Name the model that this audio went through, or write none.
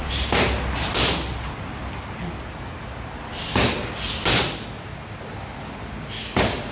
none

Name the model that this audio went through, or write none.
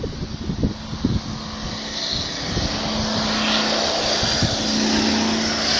none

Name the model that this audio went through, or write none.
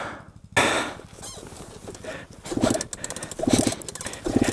none